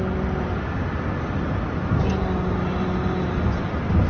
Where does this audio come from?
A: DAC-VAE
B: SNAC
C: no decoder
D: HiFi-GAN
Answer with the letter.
C